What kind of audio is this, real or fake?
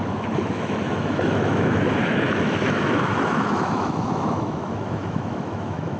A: fake